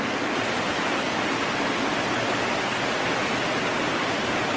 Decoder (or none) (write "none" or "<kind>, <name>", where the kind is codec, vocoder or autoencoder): none